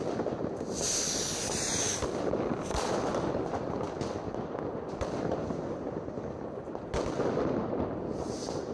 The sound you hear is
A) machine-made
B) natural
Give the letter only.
B